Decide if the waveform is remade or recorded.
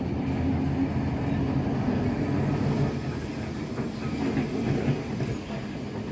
recorded